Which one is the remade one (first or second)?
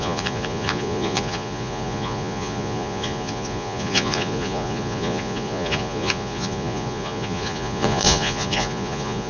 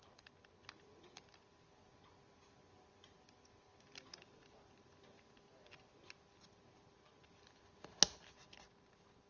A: first